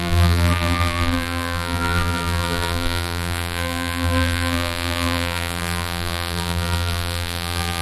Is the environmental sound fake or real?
fake